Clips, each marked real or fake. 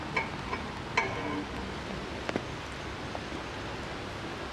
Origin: real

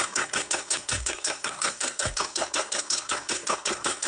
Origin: fake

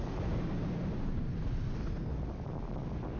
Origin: real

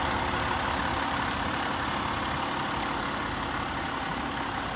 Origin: real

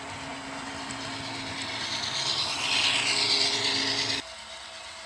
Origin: real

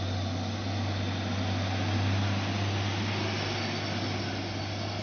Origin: real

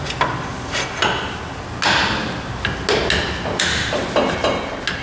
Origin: real